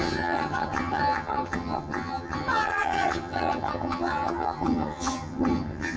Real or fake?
fake